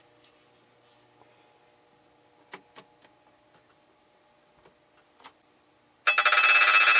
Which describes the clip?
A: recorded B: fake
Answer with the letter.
A